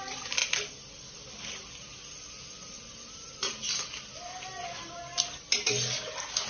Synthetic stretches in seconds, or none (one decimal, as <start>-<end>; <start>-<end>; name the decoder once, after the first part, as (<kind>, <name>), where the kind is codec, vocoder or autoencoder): none